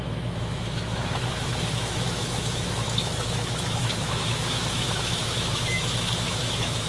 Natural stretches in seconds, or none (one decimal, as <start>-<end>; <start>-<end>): none